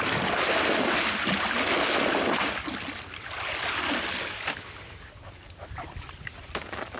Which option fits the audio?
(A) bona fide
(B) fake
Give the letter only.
A